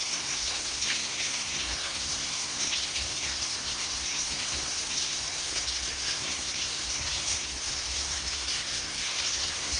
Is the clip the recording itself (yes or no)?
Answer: no